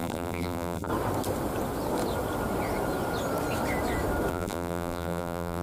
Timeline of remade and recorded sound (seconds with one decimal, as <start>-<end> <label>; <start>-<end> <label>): 0.0-0.9 remade; 0.9-4.3 recorded; 4.3-5.6 remade